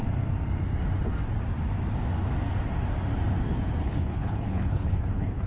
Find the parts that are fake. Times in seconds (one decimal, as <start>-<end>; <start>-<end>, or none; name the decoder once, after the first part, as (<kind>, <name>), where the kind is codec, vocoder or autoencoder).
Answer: 3.8-5.5 (codec, HILCodec)